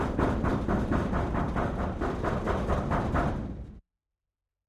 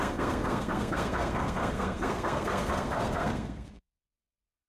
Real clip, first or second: first